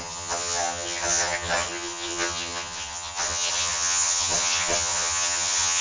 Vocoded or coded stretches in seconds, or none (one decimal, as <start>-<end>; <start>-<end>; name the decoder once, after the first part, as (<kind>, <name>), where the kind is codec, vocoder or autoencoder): 0.0-5.8 (vocoder, HiFi-GAN)